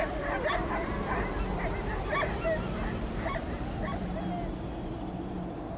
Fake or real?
real